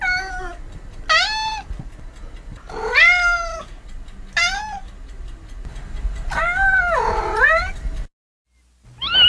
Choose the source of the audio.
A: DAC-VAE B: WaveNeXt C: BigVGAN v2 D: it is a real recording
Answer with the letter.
D